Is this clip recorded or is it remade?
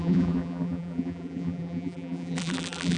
remade